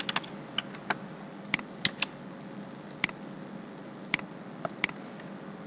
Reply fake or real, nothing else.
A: real